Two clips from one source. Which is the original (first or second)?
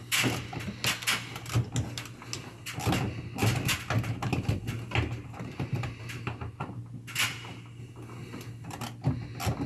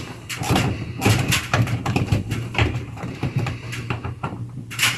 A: first